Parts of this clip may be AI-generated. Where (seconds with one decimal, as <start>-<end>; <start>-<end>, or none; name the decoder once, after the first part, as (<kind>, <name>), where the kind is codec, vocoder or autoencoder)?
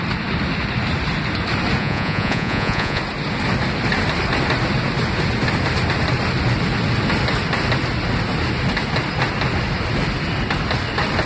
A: 1.8-3.0 (vocoder, Vocos)